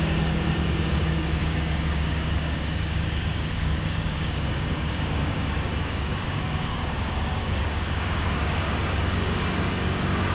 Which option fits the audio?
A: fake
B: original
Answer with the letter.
A